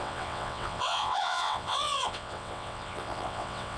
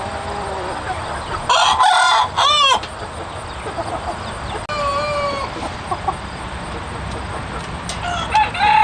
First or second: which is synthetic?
first